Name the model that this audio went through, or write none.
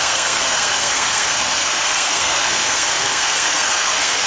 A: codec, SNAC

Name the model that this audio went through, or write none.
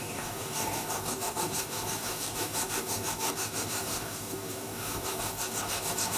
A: codec, DAC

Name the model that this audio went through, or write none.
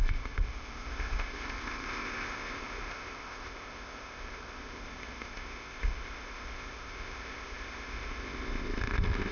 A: codec, ZipCodec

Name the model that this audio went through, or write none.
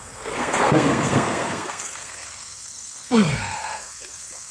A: codec, SNAC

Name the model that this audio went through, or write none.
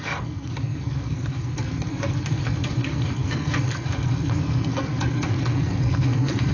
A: codec, SNAC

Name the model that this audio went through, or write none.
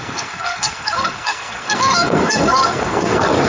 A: codec, SNAC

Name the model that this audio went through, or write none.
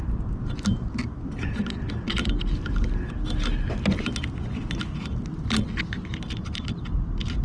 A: none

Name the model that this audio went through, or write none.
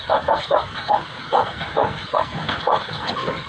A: codec, SNAC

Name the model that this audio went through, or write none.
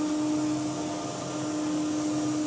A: none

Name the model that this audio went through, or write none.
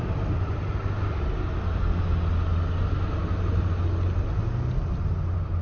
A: none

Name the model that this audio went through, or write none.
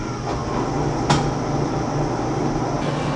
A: none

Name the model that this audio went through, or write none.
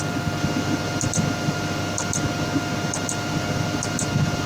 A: none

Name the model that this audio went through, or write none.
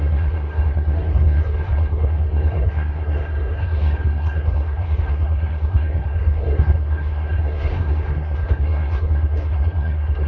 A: codec, SNAC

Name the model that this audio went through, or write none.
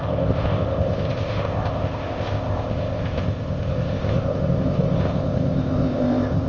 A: codec, ZipCodec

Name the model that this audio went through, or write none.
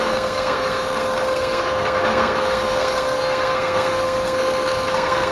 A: codec, SNAC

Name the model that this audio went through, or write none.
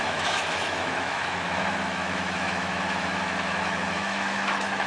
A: autoencoder, DAC-VAE